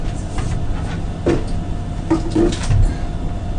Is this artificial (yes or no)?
no